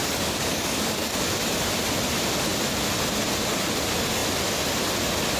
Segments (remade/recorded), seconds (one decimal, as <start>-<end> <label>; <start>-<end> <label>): 0.0-1.2 remade; 1.2-5.4 recorded